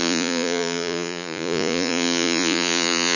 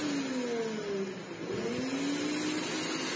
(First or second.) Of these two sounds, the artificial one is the first